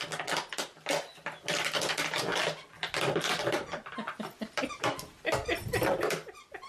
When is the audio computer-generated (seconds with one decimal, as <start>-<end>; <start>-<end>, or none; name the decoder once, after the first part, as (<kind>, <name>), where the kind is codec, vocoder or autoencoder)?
none